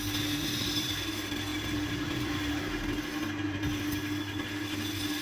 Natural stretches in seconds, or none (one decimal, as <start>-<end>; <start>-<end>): 0.0-1.5; 2.6-5.2